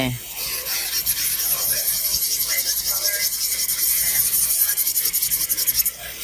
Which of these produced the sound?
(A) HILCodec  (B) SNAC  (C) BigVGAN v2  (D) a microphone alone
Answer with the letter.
D